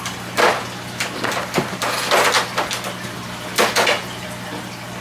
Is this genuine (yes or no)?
yes